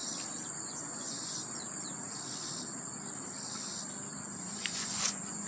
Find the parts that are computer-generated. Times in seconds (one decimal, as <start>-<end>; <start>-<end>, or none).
0.6-1.4; 4.4-5.5